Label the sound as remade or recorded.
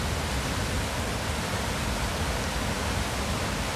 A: recorded